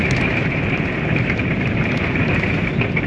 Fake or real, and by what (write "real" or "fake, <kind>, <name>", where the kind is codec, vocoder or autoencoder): real